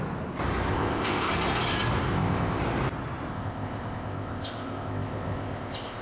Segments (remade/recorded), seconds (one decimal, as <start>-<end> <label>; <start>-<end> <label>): 0.0-0.7 recorded; 0.7-1.3 remade; 1.3-2.1 recorded; 2.1-2.6 remade; 2.6-3.3 recorded; 3.3-6.0 remade